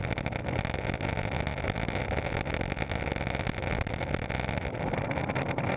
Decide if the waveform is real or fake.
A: real